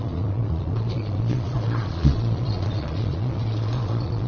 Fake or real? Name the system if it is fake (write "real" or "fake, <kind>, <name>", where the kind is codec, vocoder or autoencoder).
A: fake, vocoder, Vocos